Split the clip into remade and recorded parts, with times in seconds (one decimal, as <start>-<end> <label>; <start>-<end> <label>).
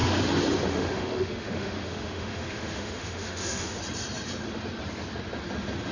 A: 0.0-0.7 recorded; 0.7-3.8 remade; 3.8-5.9 recorded